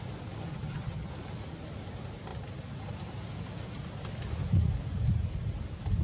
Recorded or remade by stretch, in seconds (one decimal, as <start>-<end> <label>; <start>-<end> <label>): 0.0-0.5 recorded; 0.5-1.1 remade; 1.1-6.0 recorded